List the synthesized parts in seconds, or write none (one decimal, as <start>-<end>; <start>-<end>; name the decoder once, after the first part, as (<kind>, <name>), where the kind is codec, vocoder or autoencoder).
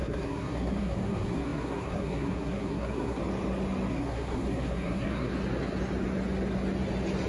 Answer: 0.0-3.2 (codec, SNAC); 3.9-5.3